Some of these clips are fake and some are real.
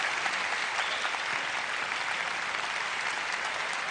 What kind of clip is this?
fake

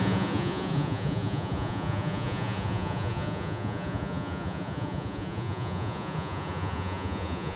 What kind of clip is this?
fake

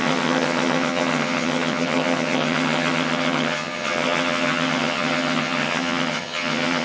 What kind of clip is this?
fake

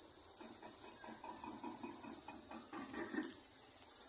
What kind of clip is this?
real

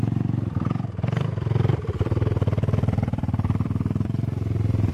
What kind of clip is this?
fake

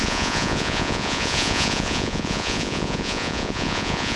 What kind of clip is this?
fake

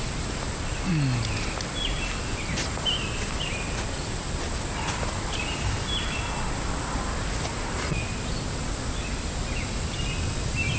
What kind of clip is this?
real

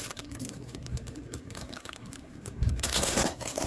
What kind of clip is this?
fake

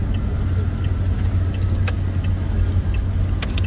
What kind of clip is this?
real